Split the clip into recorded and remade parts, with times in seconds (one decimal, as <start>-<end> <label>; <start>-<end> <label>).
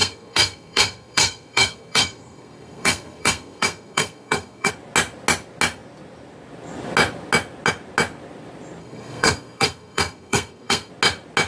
0.0-4.7 remade; 4.7-8.8 recorded; 8.8-10.9 remade; 10.9-11.5 recorded